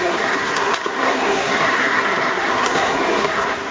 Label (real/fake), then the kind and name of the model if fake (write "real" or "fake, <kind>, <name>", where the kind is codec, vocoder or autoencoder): fake, codec, SNAC